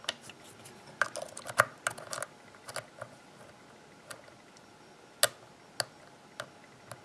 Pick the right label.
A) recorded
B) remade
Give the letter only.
A